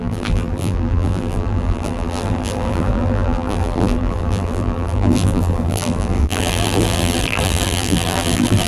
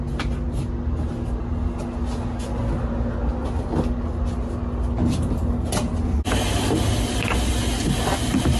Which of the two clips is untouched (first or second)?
second